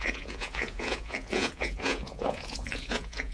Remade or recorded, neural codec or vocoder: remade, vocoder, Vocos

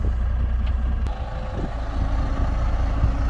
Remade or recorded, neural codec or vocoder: recorded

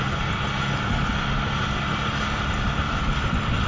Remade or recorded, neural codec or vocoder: recorded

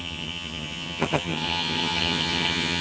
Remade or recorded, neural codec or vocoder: remade, vocoder, HiFi-GAN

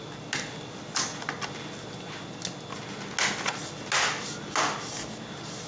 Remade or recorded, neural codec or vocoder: recorded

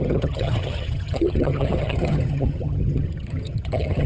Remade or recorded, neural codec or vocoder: remade, vocoder, HiFi-GAN